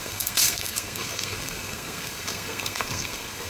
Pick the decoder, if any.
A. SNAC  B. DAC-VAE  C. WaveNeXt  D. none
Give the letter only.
A